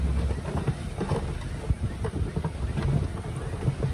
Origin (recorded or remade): recorded